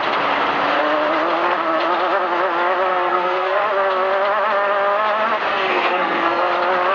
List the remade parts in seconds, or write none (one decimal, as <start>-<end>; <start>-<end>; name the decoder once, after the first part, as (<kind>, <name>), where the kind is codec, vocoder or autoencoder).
2.9-3.6 (codec, SNAC); 5.5-6.5